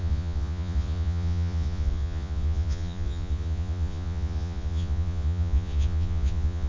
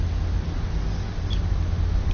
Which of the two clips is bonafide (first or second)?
second